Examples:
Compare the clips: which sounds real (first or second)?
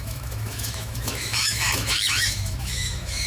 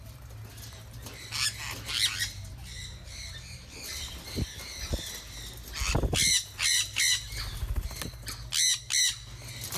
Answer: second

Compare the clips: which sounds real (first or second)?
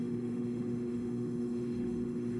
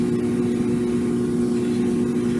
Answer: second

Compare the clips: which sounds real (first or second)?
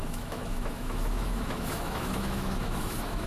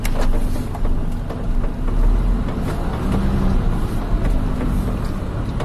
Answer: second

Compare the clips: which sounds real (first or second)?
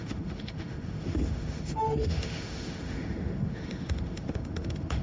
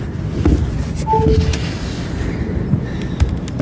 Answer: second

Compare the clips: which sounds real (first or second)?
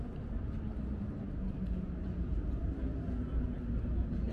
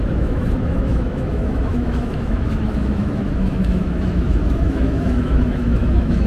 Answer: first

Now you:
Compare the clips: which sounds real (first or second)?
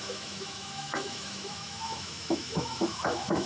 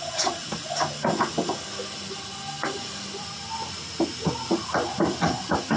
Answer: second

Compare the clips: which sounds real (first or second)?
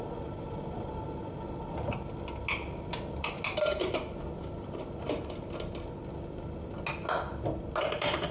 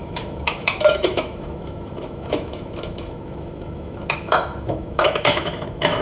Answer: first